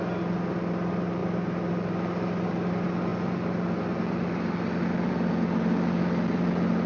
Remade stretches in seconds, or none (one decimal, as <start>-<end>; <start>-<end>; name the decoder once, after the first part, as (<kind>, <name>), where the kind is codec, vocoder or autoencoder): none